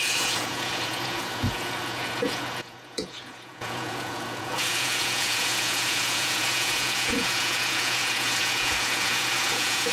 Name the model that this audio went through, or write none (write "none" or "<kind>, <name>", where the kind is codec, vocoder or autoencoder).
vocoder, Vocos